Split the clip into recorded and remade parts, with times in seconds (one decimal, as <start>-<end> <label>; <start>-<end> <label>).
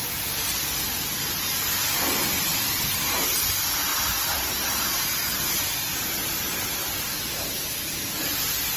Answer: 0.0-7.1 recorded; 7.1-8.2 remade; 8.2-8.8 recorded